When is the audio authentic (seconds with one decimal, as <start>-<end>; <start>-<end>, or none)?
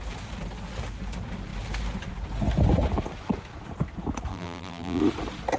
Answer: 0.0-4.3; 5.0-5.6